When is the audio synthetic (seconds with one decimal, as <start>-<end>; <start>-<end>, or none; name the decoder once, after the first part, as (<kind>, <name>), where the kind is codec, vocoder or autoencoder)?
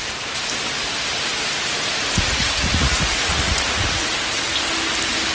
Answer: 2.0-4.1 (vocoder, Vocos)